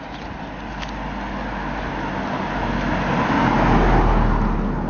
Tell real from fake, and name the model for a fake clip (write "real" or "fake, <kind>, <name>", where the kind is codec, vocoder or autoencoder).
real